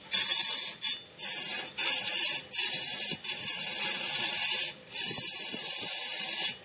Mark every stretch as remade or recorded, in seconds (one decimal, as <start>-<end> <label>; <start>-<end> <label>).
0.0-1.8 recorded; 1.8-5.8 remade; 5.8-6.6 recorded